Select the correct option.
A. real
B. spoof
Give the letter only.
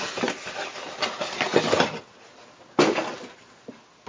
A